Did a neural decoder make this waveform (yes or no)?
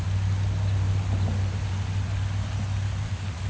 no